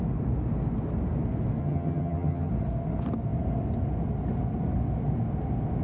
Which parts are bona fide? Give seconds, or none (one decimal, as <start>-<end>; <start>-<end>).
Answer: 0.0-1.6; 2.5-5.8